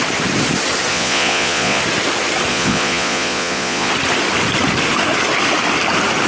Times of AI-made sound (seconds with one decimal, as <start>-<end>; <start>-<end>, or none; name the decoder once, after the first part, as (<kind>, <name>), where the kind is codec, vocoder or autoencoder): 0.9-1.8 (vocoder, Vocos); 2.5-3.9